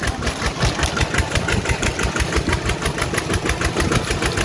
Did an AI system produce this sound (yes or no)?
no